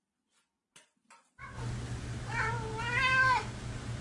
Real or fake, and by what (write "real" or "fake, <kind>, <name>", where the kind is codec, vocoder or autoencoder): real